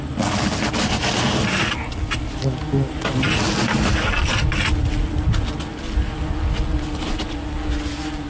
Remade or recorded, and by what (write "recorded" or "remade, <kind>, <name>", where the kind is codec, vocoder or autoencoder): recorded